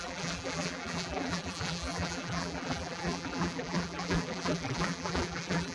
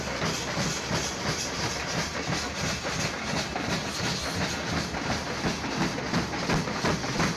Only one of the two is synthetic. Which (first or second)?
first